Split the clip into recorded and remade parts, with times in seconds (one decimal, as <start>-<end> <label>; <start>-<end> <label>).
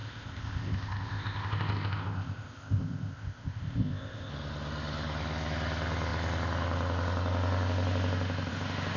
0.0-4.3 remade; 4.3-9.0 recorded